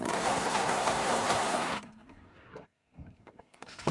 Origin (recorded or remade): remade